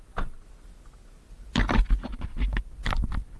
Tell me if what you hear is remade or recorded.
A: recorded